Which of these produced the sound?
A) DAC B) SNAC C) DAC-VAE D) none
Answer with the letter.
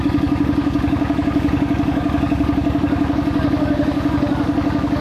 A